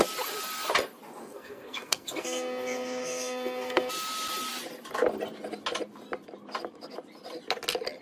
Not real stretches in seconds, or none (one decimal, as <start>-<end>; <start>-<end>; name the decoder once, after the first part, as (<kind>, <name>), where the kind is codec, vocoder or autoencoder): 1.2-3.9 (codec, SNAC)